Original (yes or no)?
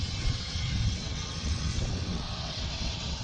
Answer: no